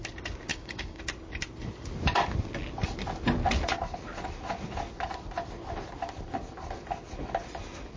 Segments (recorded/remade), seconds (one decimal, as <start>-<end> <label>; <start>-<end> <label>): 0.0-0.5 recorded; 0.5-1.0 remade; 1.0-8.0 recorded